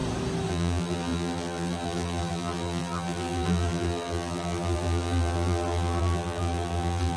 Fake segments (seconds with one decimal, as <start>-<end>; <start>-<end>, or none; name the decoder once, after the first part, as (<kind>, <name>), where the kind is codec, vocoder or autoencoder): 0.5-7.2 (vocoder, BigVGAN v2)